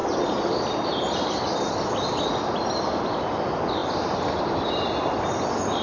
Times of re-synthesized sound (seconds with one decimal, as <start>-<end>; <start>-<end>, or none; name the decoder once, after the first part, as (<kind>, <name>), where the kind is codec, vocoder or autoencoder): 0.0-1.7 (vocoder, BigVGAN v2)